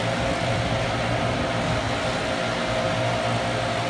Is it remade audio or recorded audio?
recorded